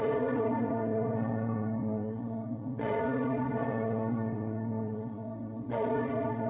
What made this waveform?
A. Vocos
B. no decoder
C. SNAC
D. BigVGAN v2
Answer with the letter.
A